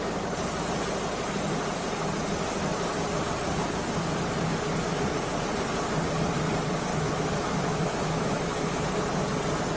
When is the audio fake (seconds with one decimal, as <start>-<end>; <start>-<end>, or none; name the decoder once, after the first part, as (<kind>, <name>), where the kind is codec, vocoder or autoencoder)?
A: 6.9-8.8 (autoencoder, DAC-VAE)